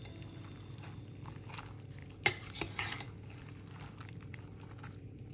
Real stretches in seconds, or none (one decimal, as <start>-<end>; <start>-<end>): 0.0-2.0